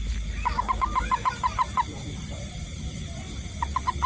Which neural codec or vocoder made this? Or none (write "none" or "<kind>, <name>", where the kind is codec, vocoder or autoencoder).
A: none